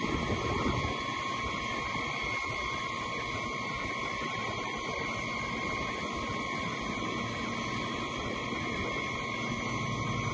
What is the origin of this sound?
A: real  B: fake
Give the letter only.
A